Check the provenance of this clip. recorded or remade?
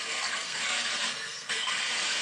remade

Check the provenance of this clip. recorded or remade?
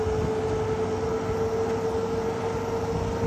recorded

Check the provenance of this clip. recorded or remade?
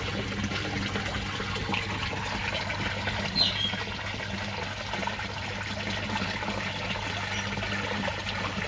recorded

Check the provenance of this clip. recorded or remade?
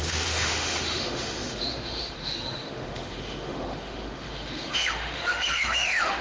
remade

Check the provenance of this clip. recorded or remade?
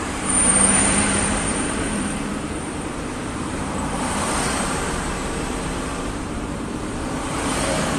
remade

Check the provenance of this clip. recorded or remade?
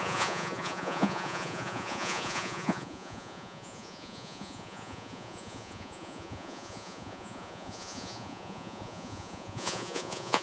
remade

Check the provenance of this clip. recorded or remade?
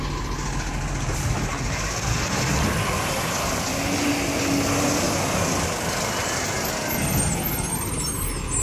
recorded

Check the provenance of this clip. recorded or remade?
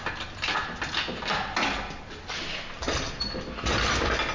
recorded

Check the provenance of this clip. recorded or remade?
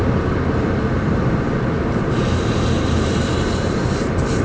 remade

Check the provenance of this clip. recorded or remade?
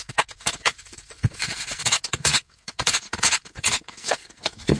remade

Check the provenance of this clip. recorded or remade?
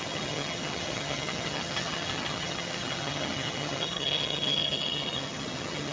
remade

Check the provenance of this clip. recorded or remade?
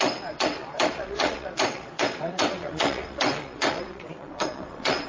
remade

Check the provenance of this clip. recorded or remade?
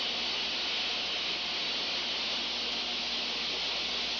recorded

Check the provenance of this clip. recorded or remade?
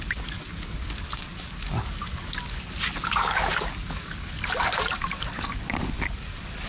remade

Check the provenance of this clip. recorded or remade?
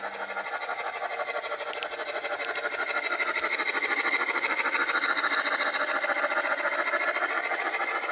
recorded